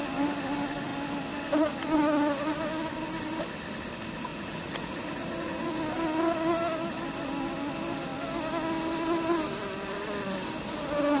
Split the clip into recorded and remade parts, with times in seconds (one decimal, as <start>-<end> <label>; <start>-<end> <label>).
0.0-4.3 recorded; 4.3-5.8 remade; 5.8-11.2 recorded